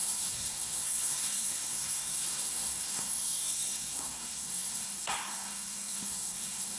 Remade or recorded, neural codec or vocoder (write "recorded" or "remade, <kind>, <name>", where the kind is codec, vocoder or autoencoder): remade, codec, SNAC